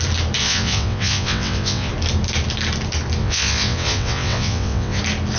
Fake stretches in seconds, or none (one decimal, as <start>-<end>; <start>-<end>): 0.4-1.9; 3.2-5.0